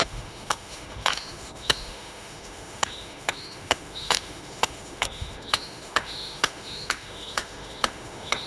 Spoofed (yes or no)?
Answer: yes